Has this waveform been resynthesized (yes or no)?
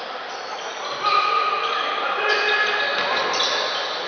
no